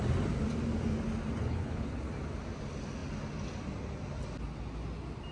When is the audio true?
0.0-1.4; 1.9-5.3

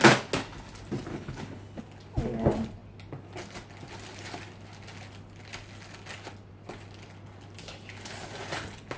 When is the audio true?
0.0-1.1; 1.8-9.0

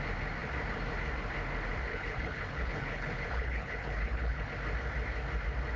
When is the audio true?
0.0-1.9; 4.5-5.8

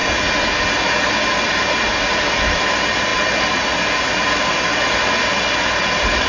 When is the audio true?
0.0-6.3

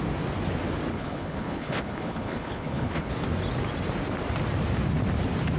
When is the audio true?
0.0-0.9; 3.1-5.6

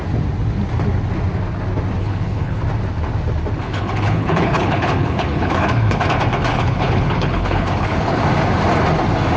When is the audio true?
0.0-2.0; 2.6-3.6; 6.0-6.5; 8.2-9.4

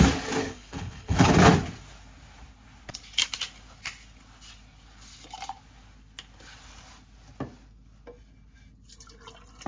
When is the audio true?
0.0-0.4; 1.3-9.7

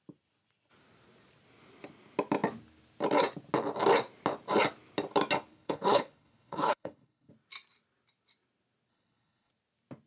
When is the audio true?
0.0-5.5; 7.3-8.9; 9.5-10.1